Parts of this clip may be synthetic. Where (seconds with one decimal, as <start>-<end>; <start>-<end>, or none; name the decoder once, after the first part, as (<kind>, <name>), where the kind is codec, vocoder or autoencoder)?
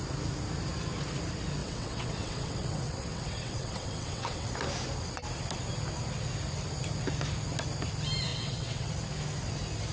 1.6-4.5 (vocoder, WaveNeXt); 8.3-8.9